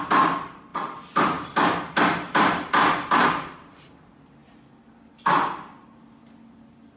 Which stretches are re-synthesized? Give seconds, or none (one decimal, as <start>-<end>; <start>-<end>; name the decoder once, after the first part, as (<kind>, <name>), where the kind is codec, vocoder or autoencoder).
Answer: none